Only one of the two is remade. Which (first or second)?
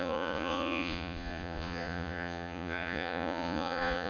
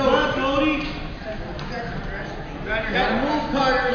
first